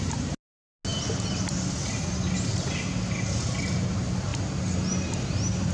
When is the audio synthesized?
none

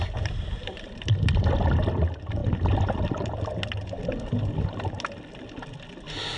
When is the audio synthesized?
0.6-1.5 (vocoder, BigVGAN v2)

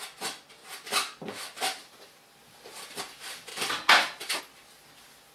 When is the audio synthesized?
3.5-4.4 (vocoder, BigVGAN v2)